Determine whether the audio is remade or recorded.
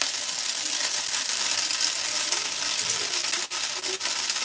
recorded